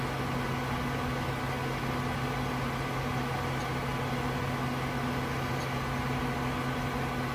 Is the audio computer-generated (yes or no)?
no